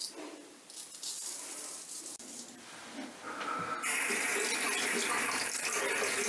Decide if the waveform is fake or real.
real